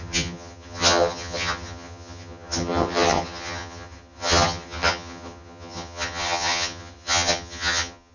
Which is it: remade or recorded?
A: remade